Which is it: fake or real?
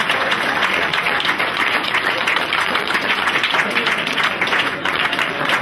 fake